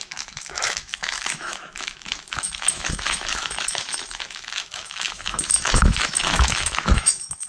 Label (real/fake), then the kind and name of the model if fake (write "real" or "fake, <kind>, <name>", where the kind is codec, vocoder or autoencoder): fake, autoencoder, DAC-VAE